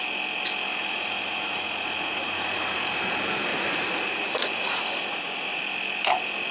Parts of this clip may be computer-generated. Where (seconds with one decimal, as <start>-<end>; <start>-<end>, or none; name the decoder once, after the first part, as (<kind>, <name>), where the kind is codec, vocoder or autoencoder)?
0.8-2.6 (vocoder, Vocos); 3.5-5.6